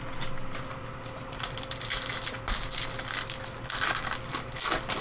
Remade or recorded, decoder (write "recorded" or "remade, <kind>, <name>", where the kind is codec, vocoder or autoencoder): recorded